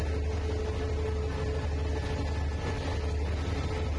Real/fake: real